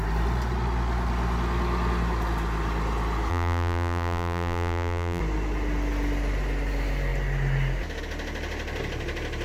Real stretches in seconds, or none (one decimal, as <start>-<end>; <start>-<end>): 0.0-3.3; 5.2-9.4

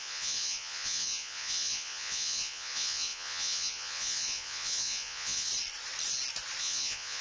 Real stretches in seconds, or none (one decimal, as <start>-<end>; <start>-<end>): 5.5-6.6

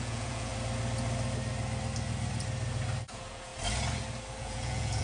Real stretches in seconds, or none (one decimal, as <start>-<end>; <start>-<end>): 0.5-3.1; 3.5-4.4

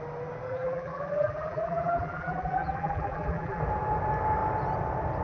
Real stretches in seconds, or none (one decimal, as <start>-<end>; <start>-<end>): 0.0-0.5; 3.6-5.2

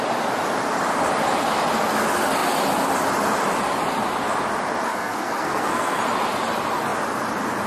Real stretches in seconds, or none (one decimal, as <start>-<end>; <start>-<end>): 0.0-4.9; 6.0-7.7

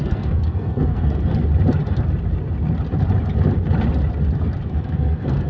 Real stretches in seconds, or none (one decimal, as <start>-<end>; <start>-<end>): 1.4-4.7

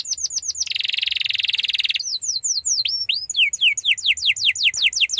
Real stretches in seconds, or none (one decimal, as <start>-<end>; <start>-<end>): 0.0-5.2

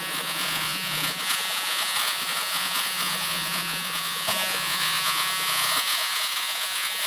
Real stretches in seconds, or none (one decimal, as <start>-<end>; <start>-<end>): none